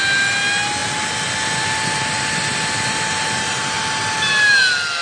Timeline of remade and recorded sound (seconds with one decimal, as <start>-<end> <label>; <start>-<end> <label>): 0.0-5.0 recorded